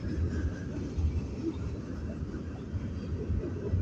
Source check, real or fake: real